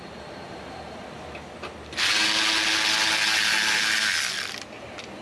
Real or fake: real